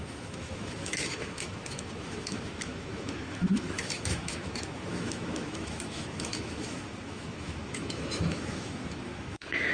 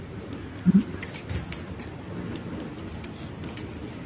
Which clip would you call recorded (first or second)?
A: second